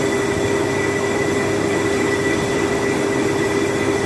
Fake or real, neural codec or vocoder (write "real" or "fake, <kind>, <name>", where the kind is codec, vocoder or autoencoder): real